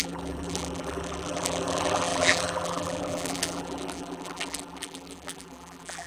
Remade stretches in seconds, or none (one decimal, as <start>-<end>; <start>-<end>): 0.0-6.1

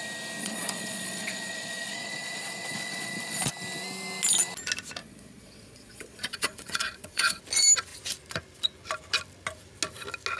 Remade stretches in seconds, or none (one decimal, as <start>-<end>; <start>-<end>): 0.4-3.5; 5.0-7.4

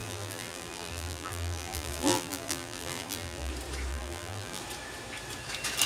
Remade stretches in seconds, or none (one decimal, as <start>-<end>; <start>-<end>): 0.0-3.5; 3.9-4.6

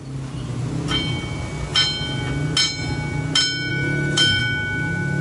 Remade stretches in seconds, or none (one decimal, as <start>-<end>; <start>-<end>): 3.7-4.4

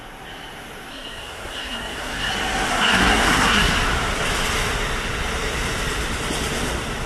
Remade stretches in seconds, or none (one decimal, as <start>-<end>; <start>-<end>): 0.9-2.3; 2.7-3.7